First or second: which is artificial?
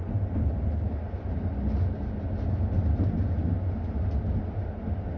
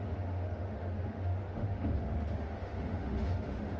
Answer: second